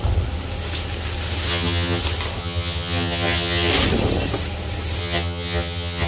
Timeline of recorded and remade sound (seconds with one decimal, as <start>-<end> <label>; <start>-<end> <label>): 0.0-1.5 recorded; 1.5-2.0 remade; 2.0-2.4 recorded; 2.4-3.7 remade; 3.7-5.0 recorded; 5.0-6.1 remade